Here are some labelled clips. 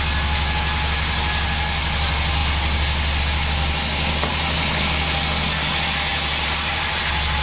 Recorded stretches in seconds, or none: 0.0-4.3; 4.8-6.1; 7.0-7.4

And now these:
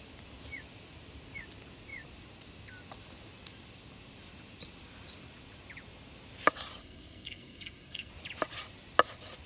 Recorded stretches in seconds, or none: 0.0-6.8; 8.1-9.5

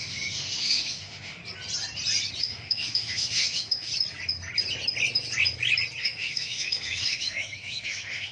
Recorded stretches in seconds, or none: 1.4-2.4; 3.9-6.0

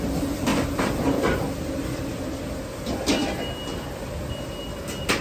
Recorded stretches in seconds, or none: 0.0-0.5; 2.0-5.2

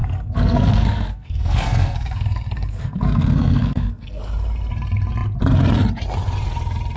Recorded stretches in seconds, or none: 4.2-7.0

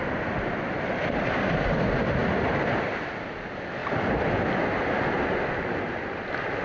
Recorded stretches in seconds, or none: 0.0-6.6

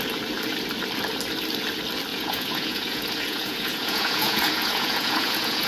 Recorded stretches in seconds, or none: 0.0-2.1

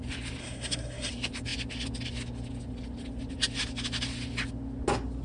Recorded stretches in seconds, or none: 0.0-0.4; 1.1-5.2